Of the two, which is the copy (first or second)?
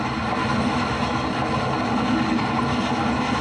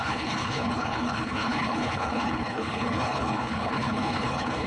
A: second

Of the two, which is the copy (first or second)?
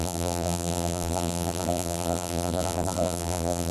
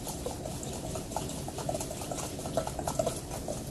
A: first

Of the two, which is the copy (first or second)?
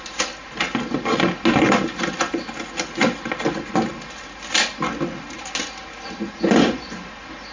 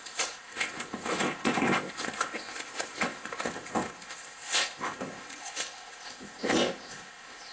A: second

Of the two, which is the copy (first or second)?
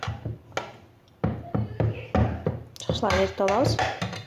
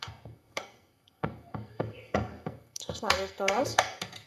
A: second